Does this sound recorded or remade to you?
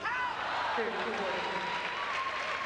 recorded